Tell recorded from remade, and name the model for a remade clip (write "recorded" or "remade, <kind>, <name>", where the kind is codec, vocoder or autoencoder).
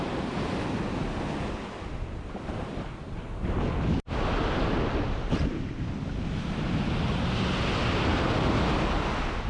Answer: recorded